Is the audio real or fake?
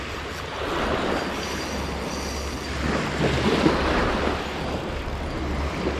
real